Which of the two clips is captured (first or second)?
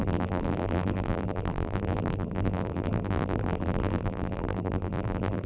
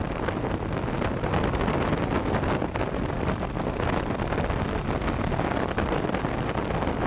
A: second